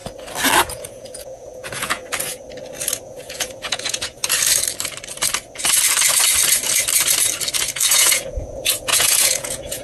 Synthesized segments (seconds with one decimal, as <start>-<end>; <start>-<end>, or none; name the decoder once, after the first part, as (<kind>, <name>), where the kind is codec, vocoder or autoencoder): 0.6-2.0 (vocoder, Vocos); 3.0-4.2; 7.9-9.8